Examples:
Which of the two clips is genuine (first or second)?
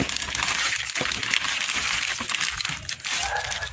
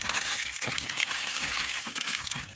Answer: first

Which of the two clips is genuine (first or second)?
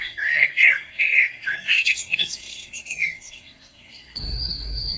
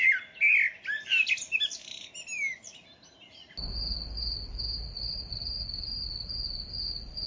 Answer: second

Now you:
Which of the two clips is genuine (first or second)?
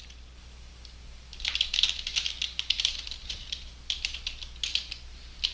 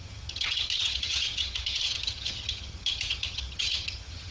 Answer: first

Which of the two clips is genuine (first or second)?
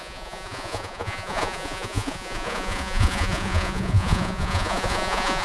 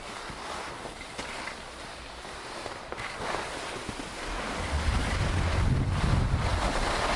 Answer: second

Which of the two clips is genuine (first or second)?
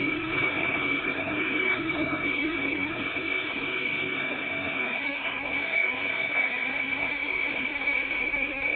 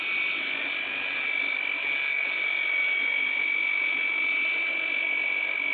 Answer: second